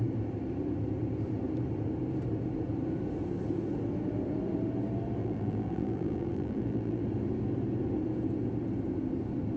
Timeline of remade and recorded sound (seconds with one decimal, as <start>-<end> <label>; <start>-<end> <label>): 0.0-5.2 recorded; 5.2-7.0 remade; 7.0-9.6 recorded